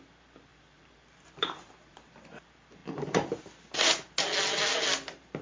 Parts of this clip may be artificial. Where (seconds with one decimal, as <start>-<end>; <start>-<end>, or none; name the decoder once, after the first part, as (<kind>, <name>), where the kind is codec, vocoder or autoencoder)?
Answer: 0.5-2.1 (vocoder, BigVGAN v2); 2.8-3.4